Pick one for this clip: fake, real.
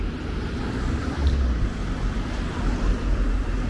real